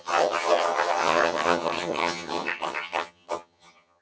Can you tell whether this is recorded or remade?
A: remade